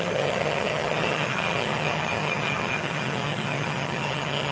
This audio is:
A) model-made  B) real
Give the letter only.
A